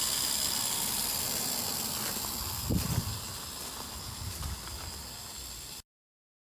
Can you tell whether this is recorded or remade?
recorded